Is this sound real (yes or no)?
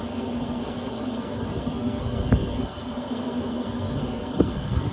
no